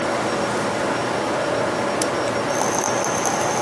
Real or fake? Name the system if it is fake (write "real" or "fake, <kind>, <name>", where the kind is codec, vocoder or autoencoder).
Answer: real